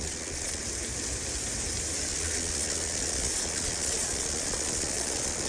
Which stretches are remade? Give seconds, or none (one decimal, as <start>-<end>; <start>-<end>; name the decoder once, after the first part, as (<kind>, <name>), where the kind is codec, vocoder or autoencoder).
0.0-0.6 (vocoder, Vocos); 2.1-5.5